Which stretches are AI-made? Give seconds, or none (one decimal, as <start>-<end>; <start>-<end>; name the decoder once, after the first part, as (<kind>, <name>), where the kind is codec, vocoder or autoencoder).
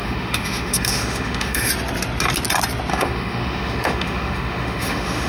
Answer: 0.0-1.7 (autoencoder, DAC-VAE); 2.9-5.3